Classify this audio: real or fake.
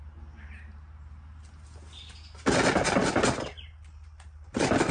real